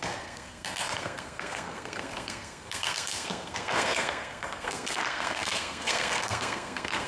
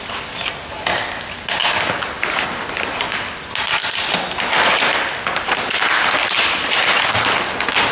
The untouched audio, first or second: second